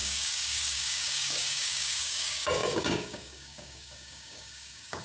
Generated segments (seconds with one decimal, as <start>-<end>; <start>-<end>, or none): 0.0-5.0